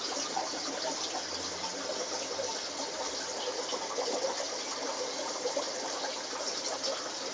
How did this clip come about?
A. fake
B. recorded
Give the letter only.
B